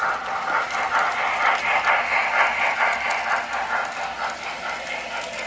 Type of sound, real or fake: real